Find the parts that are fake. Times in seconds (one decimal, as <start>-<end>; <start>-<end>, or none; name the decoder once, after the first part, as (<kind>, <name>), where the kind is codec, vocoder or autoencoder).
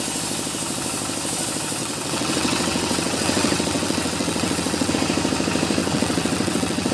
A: 1.8-4.9 (vocoder, WaveNeXt); 5.8-6.9